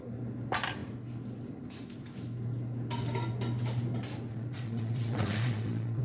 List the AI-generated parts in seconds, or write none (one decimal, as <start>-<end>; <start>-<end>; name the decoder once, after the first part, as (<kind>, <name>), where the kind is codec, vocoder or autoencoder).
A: 4.3-6.0 (vocoder, Vocos)